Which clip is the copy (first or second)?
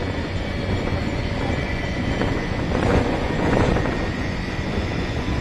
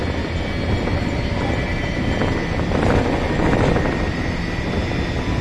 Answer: first